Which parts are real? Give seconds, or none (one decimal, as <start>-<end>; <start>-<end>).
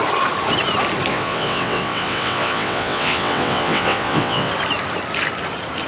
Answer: 0.0-1.1; 4.5-5.9